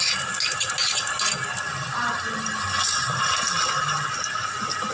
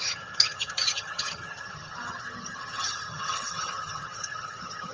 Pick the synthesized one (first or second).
second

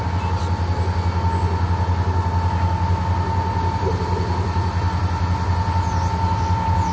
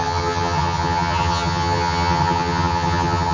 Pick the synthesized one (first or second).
second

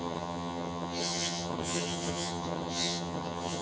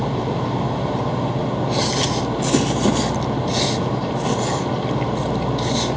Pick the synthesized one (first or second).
first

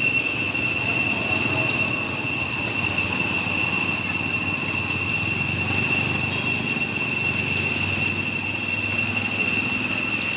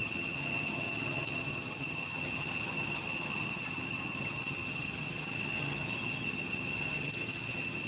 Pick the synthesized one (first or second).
second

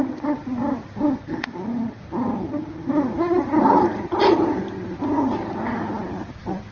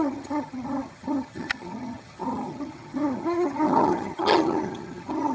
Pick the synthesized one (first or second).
second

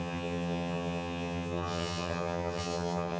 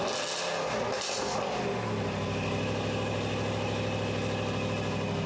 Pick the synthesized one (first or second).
first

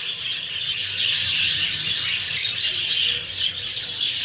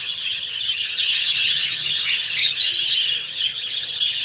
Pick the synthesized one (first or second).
second